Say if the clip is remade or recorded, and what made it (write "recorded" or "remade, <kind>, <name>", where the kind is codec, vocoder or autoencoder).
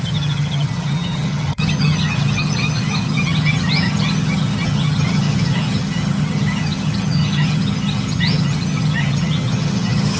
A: remade, vocoder, HiFi-GAN